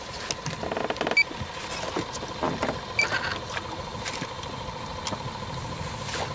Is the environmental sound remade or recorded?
recorded